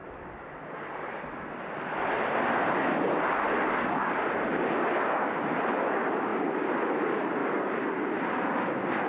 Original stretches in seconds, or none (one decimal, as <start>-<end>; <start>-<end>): 0.0-9.1